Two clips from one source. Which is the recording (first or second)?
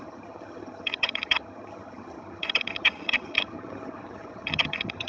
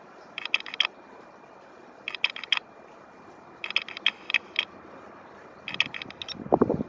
second